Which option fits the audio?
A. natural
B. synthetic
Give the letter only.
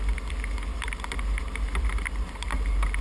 A